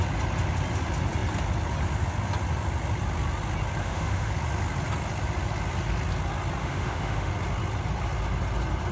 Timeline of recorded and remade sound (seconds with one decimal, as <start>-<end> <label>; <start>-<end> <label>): 0.0-3.8 recorded; 3.8-4.3 remade; 4.3-6.6 recorded; 6.6-7.3 remade; 7.3-8.9 recorded